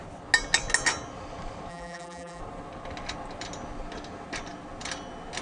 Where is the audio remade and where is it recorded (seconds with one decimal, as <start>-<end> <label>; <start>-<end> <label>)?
0.0-1.7 recorded; 1.7-2.4 remade; 2.4-5.4 recorded